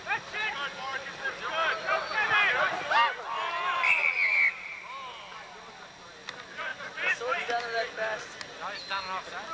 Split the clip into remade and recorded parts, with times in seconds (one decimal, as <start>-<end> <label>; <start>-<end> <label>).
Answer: 0.0-9.5 recorded